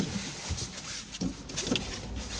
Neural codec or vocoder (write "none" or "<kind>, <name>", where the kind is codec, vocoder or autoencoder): none